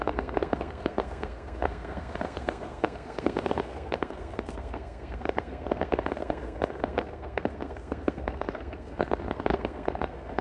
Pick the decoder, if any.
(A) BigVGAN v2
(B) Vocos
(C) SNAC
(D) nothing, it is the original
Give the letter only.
C